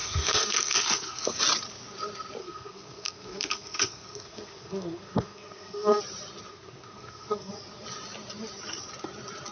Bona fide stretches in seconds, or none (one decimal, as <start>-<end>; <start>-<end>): 1.4-2.4; 6.0-6.5; 7.5-9.5